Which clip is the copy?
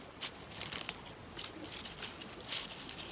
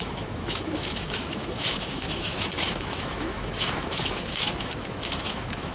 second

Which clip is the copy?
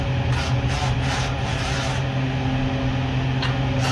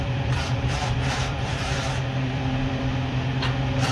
second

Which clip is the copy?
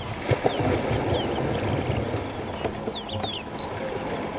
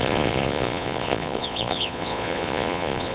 second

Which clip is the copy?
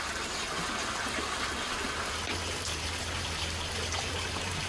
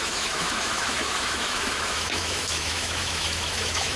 second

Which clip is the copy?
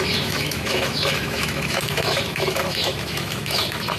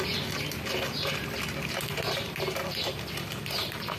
first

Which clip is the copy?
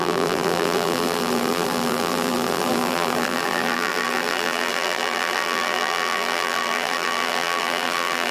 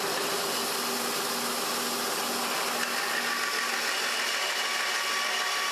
first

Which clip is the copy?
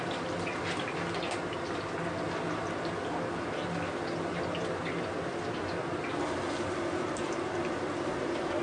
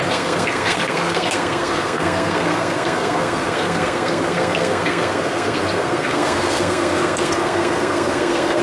second